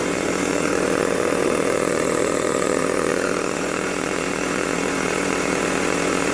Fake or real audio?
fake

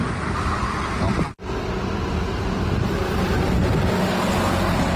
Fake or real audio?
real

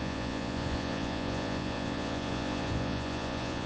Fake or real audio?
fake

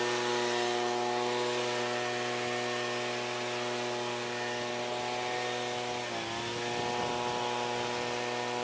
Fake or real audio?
real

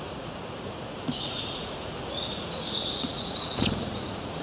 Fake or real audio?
fake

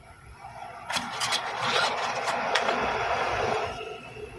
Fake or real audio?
fake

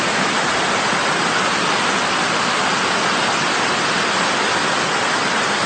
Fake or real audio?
real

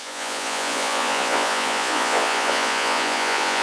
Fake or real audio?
fake